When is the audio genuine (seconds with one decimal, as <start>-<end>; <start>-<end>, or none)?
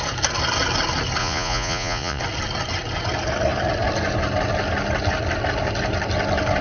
0.0-1.2; 2.2-6.6